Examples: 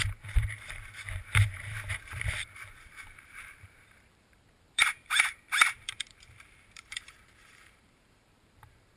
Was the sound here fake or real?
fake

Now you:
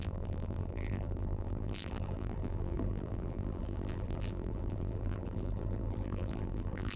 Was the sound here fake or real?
fake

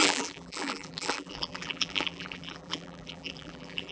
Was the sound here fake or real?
fake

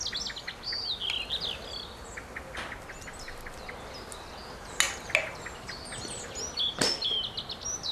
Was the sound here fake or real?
real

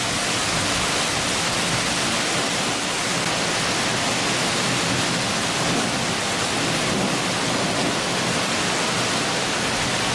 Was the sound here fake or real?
real